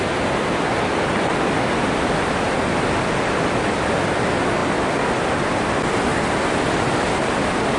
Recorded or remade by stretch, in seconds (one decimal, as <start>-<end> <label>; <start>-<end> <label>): 0.0-7.8 recorded